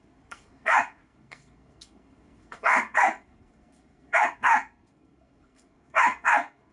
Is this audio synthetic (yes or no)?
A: yes